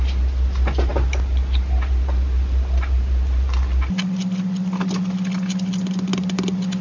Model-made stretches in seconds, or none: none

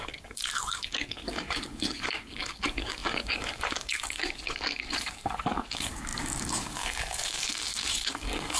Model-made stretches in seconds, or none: 0.0-8.6 (codec, DAC)

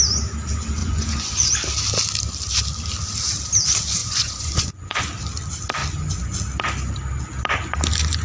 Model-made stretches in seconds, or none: 0.8-1.5 (vocoder, Vocos); 4.0-5.0

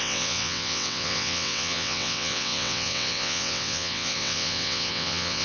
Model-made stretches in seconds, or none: 0.0-5.4 (vocoder, WaveNeXt)